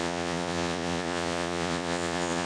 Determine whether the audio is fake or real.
fake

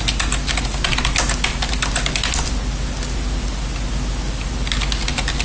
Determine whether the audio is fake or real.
real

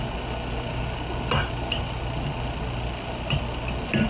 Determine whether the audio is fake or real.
real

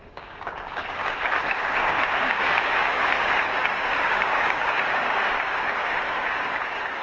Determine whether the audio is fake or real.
fake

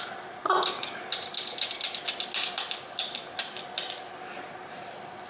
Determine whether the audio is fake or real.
real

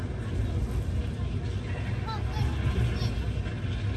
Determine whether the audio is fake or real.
real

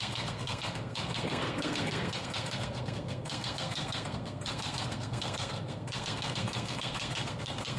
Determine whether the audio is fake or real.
fake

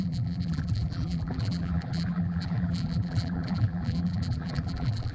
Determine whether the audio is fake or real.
fake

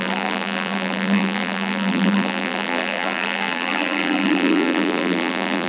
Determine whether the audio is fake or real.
fake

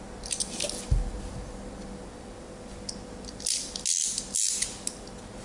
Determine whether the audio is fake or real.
real